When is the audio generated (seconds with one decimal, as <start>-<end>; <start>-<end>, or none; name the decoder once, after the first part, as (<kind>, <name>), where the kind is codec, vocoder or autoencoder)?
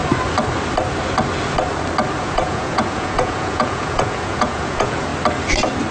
2.2-5.1 (vocoder, Vocos)